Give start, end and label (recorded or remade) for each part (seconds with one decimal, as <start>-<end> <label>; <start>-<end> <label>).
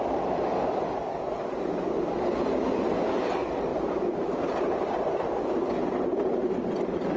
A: 0.0-7.2 recorded